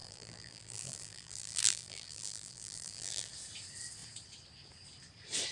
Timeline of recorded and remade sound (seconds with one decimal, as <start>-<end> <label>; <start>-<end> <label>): 0.0-3.3 remade; 3.3-5.5 recorded